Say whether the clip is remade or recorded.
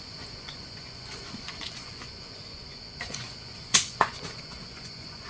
remade